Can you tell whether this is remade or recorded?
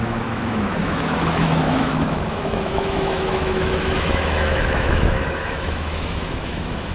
remade